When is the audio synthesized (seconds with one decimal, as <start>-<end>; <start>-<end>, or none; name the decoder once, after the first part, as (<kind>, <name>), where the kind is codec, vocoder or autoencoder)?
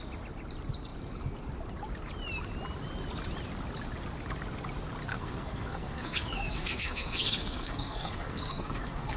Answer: 5.1-9.2 (codec, SNAC)